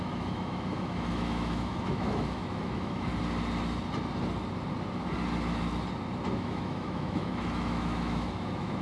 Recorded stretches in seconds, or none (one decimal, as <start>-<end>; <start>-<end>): 3.1-6.3